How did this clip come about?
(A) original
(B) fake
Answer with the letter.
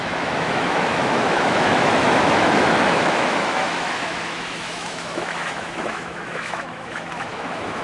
B